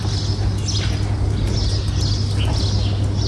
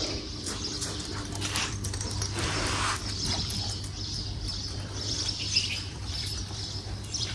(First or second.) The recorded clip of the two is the first